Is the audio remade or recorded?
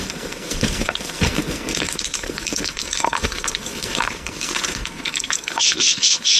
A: remade